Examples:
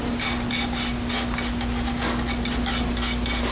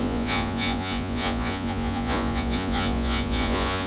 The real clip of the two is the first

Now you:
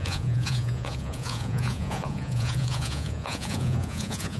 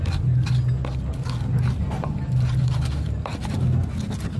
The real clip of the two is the second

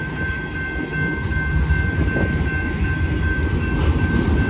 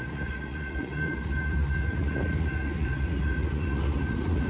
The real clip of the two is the first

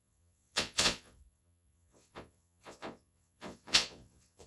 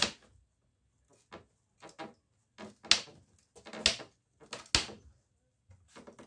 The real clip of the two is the second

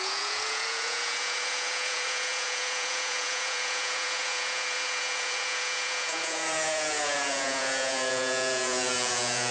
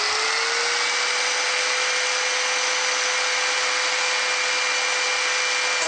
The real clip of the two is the second